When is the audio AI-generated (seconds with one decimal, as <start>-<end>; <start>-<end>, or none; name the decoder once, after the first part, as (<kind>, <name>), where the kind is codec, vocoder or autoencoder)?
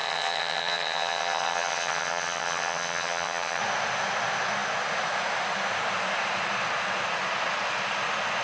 0.0-3.6 (vocoder, HiFi-GAN)